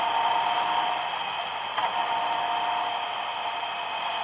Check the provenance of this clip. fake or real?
real